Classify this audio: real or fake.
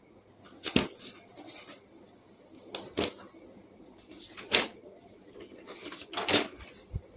real